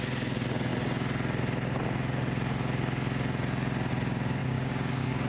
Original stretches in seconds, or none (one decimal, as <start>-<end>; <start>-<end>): 0.0-4.4